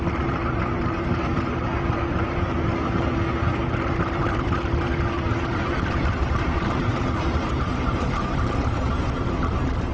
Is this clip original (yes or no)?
no